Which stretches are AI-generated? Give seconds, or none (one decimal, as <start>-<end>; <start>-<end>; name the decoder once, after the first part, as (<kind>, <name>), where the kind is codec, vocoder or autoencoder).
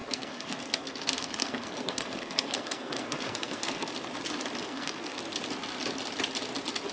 0.0-3.9 (codec, SNAC); 4.6-5.2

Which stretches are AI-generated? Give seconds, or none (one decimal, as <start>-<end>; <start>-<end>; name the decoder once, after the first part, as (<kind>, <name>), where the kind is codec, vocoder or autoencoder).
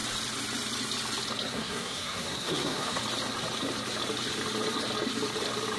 1.5-3.0 (codec, SNAC)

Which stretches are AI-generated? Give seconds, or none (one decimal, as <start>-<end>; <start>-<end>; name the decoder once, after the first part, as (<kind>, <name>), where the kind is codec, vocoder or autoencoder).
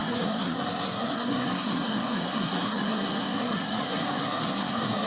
0.0-5.1 (codec, SNAC)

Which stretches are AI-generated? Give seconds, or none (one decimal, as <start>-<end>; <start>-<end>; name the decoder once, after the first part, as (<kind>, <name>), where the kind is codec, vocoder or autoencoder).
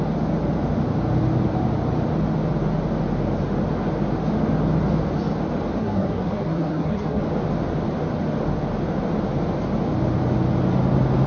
5.8-7.2 (codec, SNAC)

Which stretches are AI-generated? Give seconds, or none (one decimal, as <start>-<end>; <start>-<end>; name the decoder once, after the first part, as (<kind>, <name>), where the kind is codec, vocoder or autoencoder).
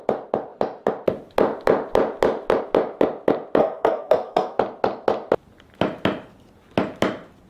3.6-4.6 (codec, SNAC)